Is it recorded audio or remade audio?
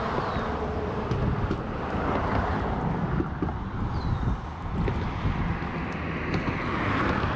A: recorded